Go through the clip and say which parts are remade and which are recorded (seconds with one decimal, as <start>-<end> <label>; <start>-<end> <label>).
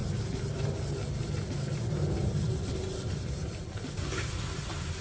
0.0-5.0 recorded